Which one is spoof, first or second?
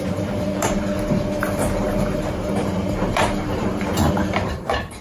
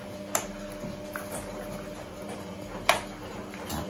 first